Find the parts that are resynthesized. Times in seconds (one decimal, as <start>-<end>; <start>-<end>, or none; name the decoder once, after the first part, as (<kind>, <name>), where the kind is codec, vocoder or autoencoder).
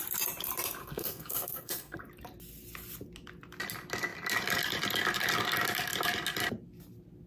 0.8-2.0 (codec, SNAC)